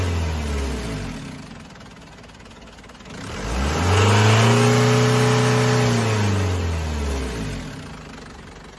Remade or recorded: recorded